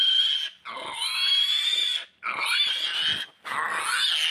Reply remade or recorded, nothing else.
recorded